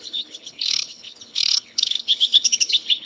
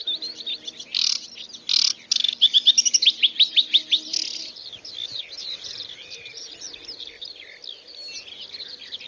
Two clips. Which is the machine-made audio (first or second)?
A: first